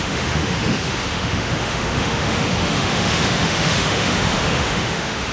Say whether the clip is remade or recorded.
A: remade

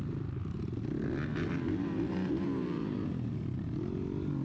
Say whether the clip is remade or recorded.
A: recorded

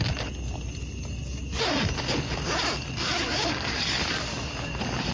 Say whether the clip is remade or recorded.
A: recorded